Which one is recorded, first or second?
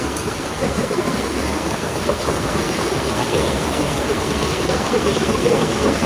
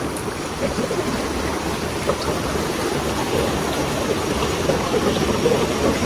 second